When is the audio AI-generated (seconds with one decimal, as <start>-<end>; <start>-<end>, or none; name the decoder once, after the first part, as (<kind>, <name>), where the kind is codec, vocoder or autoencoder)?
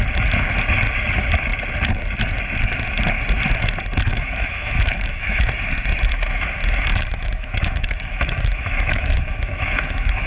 4.1-5.5 (autoencoder, DAC-VAE); 6.9-10.3